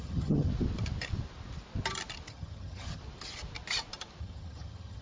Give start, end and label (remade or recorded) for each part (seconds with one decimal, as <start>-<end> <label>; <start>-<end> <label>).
0.0-0.5 remade; 0.5-2.3 recorded; 2.3-3.0 remade; 3.0-4.2 recorded; 4.2-5.0 remade